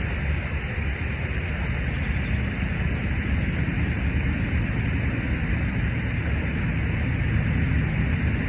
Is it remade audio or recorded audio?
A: recorded